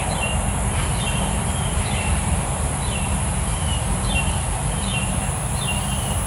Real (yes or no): no